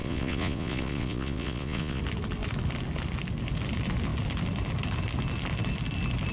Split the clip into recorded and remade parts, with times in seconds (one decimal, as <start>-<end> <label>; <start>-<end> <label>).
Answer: 0.0-2.0 remade; 2.0-6.3 recorded